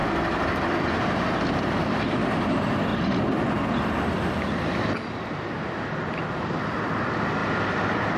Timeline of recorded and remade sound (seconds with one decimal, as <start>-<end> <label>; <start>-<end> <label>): 0.0-2.0 remade; 2.0-2.9 recorded; 2.9-6.4 remade; 6.4-7.4 recorded; 7.4-8.2 remade

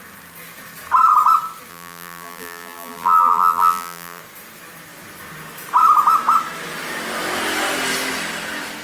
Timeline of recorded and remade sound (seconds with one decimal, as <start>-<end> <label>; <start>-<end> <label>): 0.0-1.7 recorded; 1.7-4.2 remade; 4.2-8.8 recorded

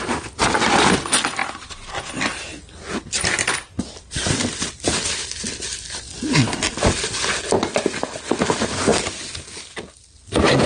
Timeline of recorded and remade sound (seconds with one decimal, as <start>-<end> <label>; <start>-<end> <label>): 0.0-1.4 recorded; 1.4-1.9 remade; 1.9-2.5 recorded; 2.5-6.7 remade; 6.7-10.7 recorded